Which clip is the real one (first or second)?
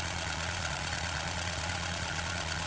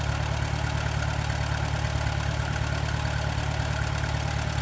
second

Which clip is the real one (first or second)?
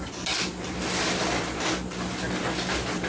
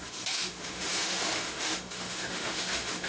first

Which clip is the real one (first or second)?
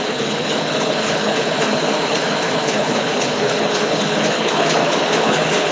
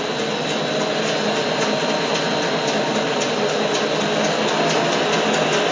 second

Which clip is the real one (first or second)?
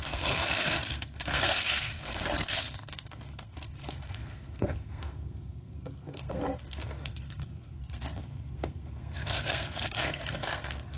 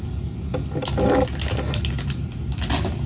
second